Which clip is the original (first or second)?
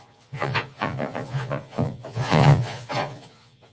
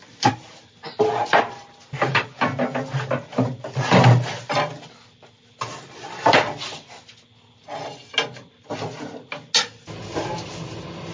second